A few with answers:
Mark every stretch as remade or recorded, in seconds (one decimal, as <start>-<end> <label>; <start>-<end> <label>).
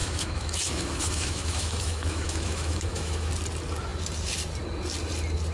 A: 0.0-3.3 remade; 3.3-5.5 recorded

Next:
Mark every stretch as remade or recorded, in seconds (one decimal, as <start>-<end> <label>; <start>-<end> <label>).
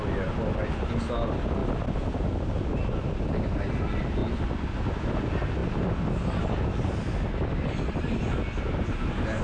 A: 0.0-9.4 recorded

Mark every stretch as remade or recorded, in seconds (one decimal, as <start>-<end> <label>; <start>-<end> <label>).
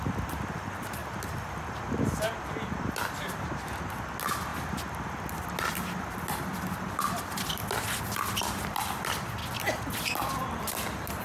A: 0.0-11.2 recorded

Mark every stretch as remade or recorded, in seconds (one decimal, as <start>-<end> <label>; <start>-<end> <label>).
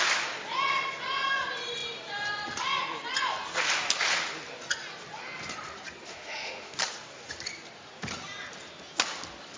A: 0.0-6.1 recorded; 6.1-6.8 remade; 6.8-9.6 recorded